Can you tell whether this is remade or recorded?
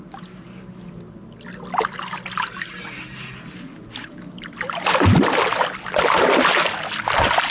recorded